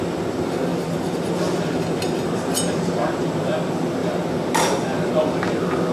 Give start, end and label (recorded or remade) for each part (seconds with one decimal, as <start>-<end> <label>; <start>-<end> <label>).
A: 0.0-5.9 recorded